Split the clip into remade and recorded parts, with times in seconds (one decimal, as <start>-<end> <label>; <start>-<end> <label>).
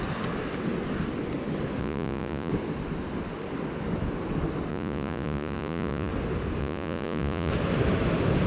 0.0-1.8 recorded; 1.8-2.5 remade; 2.5-4.7 recorded; 4.7-6.1 remade; 6.1-6.6 recorded; 6.6-7.5 remade; 7.5-8.5 recorded